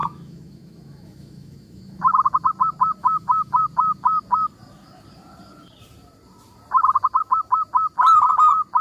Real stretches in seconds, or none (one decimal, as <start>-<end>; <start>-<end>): 2.0-3.0; 3.6-8.8